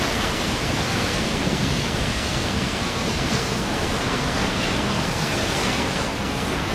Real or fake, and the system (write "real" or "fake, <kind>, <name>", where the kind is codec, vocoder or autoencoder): fake, codec, SNAC